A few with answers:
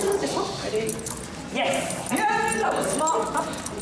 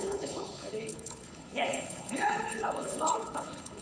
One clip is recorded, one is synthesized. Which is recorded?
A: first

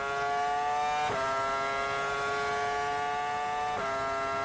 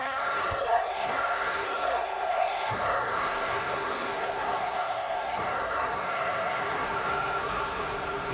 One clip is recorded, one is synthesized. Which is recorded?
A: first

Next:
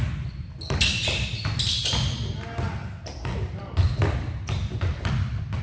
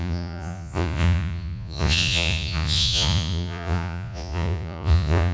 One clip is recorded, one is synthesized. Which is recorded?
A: first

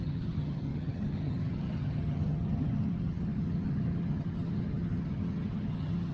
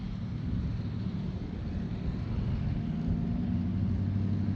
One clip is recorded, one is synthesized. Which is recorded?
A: second